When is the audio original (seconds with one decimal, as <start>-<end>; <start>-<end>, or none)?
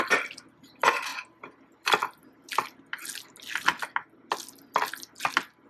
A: 0.0-5.7